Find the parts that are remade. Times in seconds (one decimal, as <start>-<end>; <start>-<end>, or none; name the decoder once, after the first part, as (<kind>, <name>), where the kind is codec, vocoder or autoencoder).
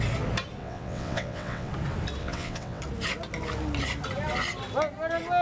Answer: 0.6-1.7 (vocoder, WaveNeXt); 2.2-2.8